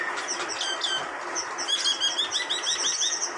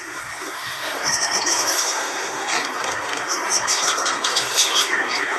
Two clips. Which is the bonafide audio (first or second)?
first